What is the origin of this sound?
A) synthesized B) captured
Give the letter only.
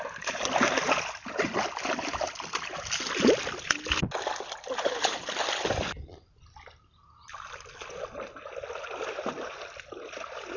B